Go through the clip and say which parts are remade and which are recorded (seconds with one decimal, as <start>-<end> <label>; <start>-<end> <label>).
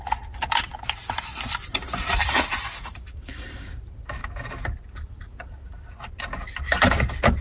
0.0-0.7 recorded; 0.7-3.5 remade; 3.5-7.4 recorded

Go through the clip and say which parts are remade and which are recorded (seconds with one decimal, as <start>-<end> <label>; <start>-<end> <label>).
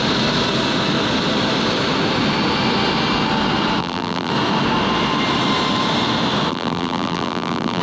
0.0-3.8 recorded; 3.8-4.3 remade; 4.3-6.5 recorded; 6.5-7.8 remade